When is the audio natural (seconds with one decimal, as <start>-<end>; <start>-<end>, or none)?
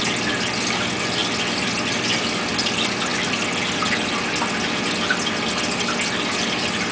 0.0-6.9